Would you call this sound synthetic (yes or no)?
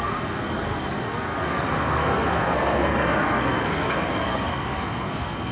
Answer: yes